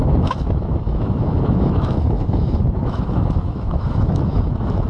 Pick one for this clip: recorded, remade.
remade